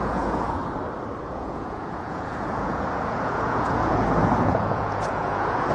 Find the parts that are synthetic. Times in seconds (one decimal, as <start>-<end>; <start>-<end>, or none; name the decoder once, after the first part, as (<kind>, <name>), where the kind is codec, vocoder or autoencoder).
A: 0.0-0.6 (vocoder, Vocos); 1.3-5.7